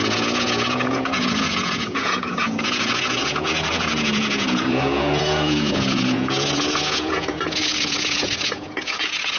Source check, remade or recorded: remade